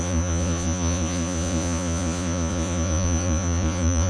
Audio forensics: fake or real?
fake